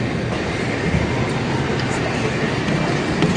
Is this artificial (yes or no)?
no